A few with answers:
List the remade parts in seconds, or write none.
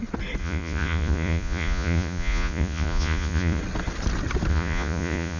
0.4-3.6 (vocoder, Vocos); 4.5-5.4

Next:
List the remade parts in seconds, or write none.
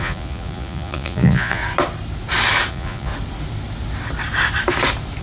0.0-1.6 (vocoder, Vocos); 2.7-3.1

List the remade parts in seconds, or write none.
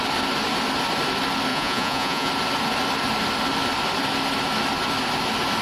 1.5-2.3 (vocoder, Vocos)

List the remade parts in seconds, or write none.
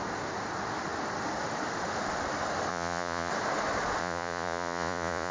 2.7-3.3 (vocoder, Vocos); 4.0-5.3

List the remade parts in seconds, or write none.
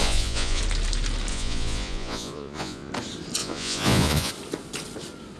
0.0-0.6 (vocoder, Vocos); 1.3-2.9; 3.4-4.3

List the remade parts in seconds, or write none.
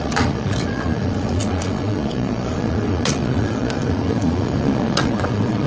0.0-5.7 (vocoder, Vocos)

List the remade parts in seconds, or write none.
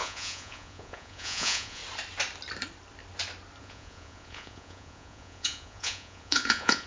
0.0-1.8 (vocoder, Vocos); 3.6-6.9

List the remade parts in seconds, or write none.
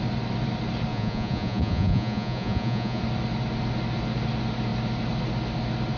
0.9-3.0 (vocoder, Vocos)